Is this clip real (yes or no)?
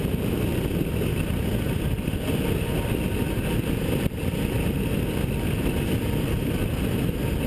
yes